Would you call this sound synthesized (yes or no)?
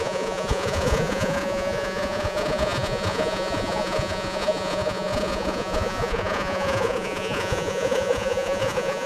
yes